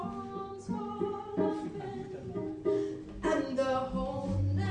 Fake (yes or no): no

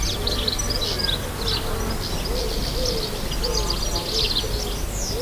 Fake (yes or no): no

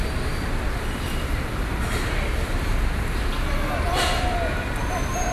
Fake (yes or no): no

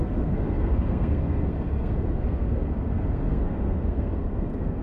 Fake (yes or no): yes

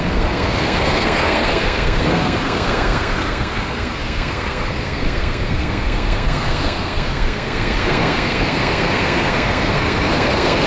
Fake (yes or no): yes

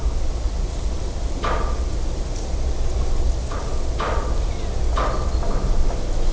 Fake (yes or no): no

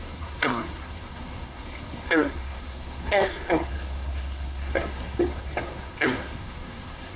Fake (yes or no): yes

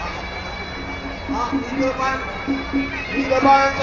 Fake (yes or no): no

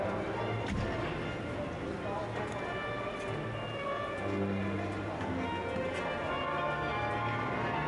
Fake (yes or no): no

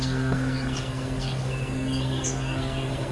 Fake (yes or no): yes